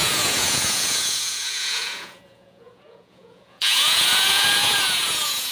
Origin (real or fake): fake